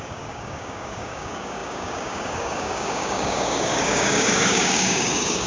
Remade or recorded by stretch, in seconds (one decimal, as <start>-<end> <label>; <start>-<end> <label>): 0.0-5.5 remade